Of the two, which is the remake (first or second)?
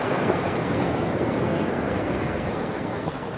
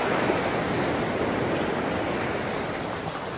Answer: first